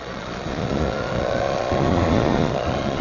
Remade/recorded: remade